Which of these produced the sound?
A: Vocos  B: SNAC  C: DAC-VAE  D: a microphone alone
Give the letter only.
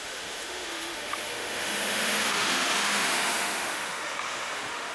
C